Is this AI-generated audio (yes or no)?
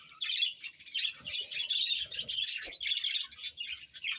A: no